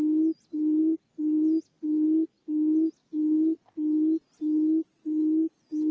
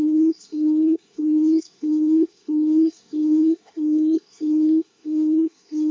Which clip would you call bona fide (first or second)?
first